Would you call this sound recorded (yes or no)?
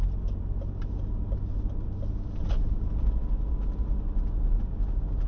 yes